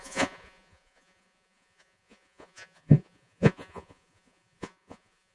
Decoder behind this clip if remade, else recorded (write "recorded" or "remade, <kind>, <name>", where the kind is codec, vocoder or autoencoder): remade, vocoder, Vocos